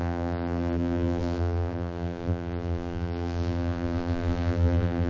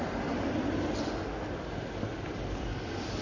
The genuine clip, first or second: second